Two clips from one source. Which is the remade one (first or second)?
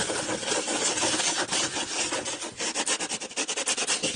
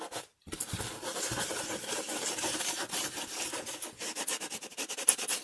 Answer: second